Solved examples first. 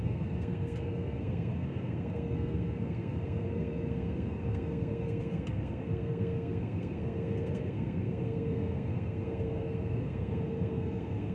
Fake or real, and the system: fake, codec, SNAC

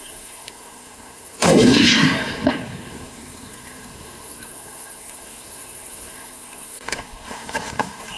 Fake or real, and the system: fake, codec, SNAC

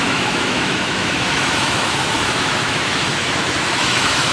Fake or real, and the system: fake, autoencoder, DAC-VAE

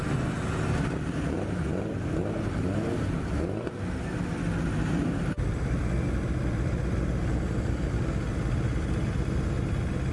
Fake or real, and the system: real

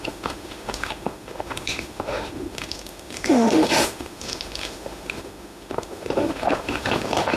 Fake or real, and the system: fake, autoencoder, DAC-VAE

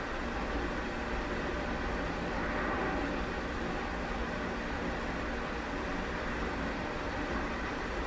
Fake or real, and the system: real